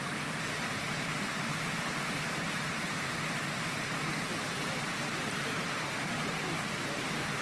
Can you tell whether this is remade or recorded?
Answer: remade